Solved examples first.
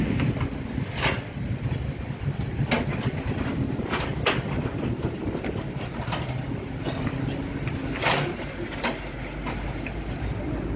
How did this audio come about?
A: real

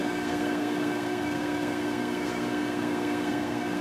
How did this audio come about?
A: fake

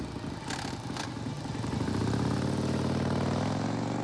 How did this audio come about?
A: real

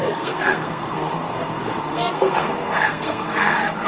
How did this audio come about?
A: fake